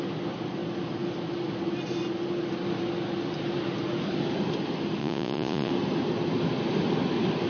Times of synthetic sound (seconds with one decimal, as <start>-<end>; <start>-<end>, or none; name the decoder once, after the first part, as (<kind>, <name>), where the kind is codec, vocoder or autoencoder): 5.0-5.7 (vocoder, Vocos)